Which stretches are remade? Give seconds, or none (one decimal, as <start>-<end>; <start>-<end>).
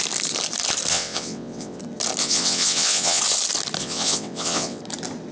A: 0.9-1.8; 2.2-3.2; 3.8-4.8